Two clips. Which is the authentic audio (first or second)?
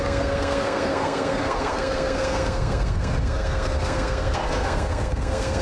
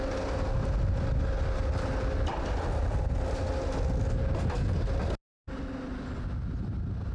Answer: second